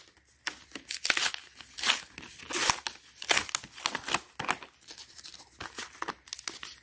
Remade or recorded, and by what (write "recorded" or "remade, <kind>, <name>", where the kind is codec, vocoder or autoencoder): recorded